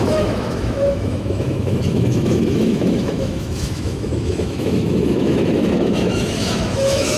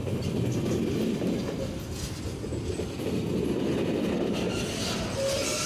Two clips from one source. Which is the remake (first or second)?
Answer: first